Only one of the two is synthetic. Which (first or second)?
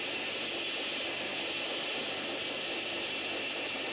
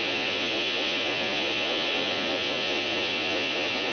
second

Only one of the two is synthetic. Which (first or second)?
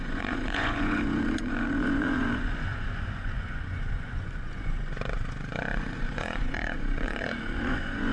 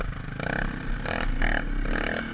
first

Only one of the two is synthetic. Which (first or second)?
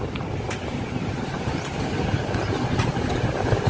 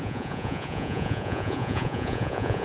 second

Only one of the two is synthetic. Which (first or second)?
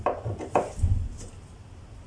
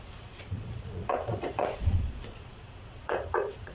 second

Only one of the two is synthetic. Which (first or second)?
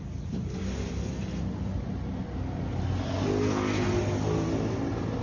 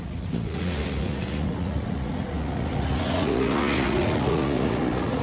second